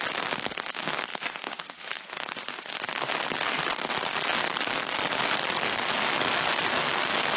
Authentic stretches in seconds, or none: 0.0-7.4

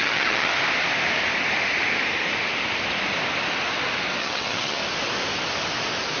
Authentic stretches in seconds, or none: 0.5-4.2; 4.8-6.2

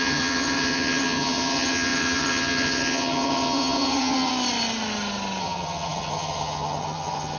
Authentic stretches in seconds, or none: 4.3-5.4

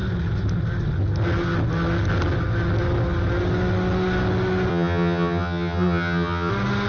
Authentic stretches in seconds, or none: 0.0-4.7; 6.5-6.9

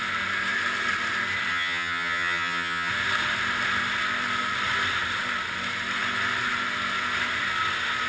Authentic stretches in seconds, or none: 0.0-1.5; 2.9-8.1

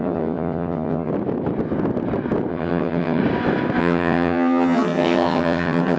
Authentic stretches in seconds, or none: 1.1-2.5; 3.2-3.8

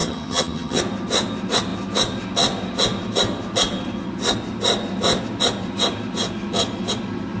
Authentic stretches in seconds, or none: 0.8-7.4